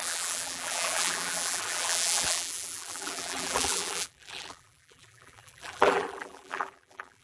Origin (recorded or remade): remade